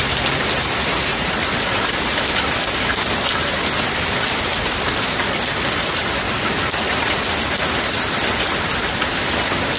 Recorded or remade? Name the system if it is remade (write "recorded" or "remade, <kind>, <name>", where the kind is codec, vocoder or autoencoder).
recorded